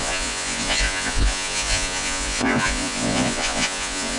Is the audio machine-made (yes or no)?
yes